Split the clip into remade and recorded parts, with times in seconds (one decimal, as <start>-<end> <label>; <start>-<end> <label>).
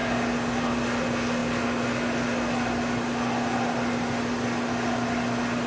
0.0-5.7 recorded